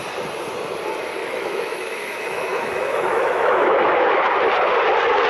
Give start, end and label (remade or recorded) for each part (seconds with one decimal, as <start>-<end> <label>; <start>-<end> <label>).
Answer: 0.0-1.2 recorded; 1.2-4.4 remade; 4.4-5.3 recorded